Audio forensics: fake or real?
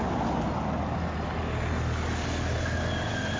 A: real